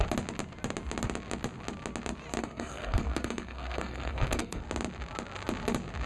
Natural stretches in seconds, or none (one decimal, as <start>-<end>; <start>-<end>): 0.0-2.4; 4.6-6.1